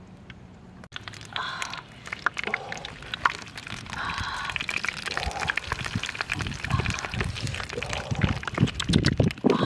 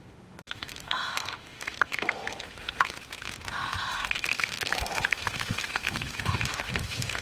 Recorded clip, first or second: first